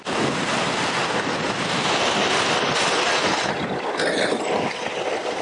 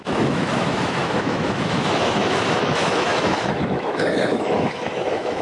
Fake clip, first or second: second